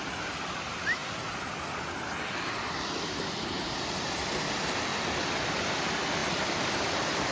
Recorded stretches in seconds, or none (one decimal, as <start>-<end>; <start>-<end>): 0.0-4.9; 5.6-6.2